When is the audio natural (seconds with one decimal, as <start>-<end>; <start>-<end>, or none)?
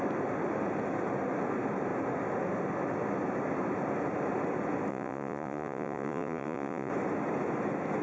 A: 0.0-4.9; 6.9-8.0